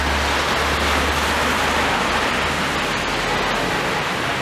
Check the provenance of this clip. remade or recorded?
recorded